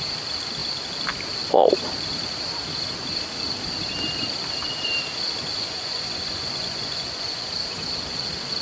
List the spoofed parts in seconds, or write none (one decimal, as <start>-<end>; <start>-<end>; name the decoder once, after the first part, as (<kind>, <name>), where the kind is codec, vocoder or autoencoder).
5.5-7.5 (vocoder, Vocos)